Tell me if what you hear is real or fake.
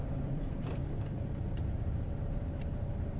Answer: fake